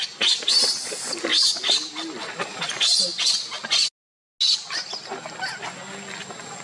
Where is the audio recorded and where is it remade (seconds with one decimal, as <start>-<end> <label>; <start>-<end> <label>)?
0.0-6.6 recorded